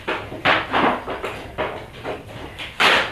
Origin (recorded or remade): recorded